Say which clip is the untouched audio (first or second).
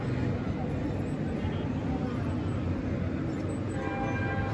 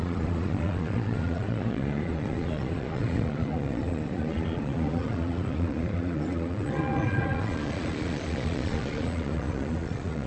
first